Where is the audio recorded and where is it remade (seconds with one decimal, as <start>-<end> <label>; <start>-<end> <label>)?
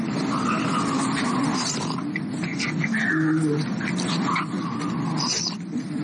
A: 0.0-6.0 recorded